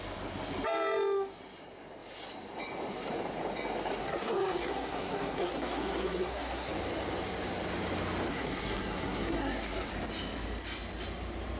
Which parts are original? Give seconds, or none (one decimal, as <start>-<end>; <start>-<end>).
0.0-4.0; 6.7-8.3; 9.9-11.6